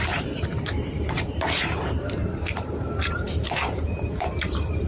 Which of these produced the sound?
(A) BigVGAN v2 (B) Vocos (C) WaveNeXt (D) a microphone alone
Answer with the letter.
A